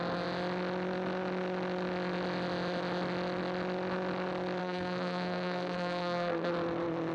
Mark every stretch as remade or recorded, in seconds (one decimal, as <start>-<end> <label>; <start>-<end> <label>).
0.0-4.6 recorded; 4.6-6.5 remade; 6.5-7.1 recorded